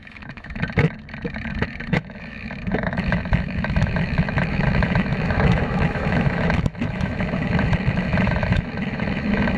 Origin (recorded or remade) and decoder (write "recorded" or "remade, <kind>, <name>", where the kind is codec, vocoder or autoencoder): remade, autoencoder, DAC-VAE